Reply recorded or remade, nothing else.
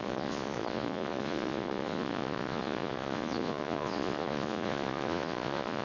remade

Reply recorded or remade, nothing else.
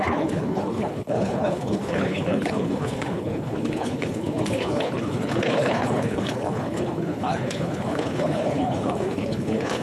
remade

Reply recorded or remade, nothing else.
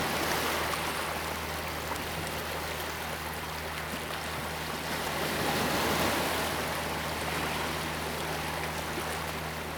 recorded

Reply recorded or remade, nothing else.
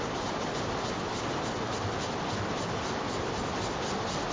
recorded